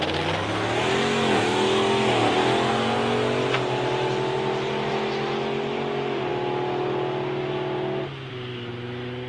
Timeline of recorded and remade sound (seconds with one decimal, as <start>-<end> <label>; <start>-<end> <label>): 0.0-9.3 recorded